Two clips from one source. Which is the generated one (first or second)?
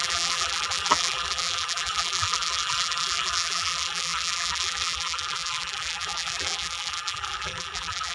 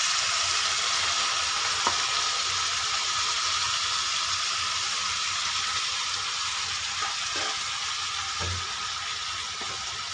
first